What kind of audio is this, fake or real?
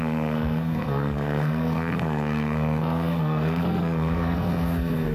fake